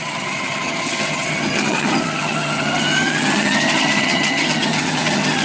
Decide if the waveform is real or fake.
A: fake